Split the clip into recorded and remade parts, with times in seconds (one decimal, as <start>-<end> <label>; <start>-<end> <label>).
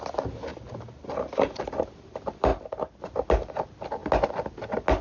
0.0-0.5 recorded; 0.5-1.6 remade; 1.6-5.0 recorded